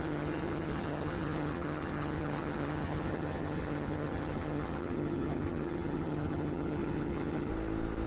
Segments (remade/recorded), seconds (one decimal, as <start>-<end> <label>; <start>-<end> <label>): 0.0-7.5 remade; 7.5-8.1 recorded